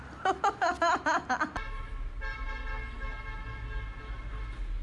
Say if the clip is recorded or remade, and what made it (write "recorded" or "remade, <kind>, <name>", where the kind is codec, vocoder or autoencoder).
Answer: recorded